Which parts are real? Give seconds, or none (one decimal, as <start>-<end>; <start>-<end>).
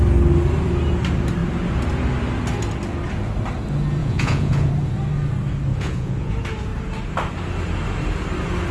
0.0-4.0; 4.7-5.7; 6.3-8.7